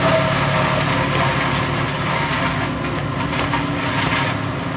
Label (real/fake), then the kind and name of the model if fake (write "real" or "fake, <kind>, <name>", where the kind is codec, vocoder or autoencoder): real